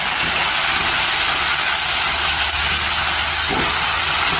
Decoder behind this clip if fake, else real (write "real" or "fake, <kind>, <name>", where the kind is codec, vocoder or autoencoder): real